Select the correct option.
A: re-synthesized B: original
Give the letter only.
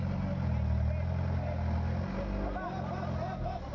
B